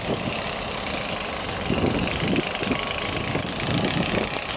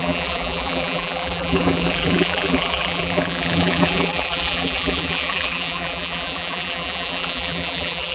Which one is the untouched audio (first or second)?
first